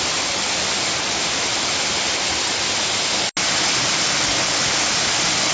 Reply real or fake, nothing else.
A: real